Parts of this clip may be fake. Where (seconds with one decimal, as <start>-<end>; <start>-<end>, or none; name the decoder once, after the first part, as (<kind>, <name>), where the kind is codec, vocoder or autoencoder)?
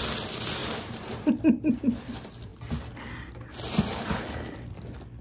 0.6-1.8 (vocoder, BigVGAN v2)